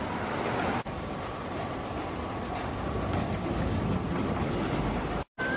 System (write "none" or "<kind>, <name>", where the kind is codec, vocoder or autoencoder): none